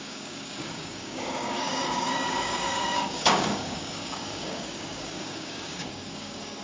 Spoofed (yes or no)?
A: yes